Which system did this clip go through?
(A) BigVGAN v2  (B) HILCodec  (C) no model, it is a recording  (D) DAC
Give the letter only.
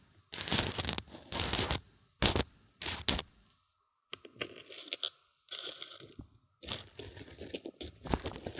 C